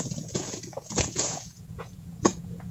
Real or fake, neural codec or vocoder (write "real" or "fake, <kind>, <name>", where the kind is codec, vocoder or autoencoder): fake, vocoder, Vocos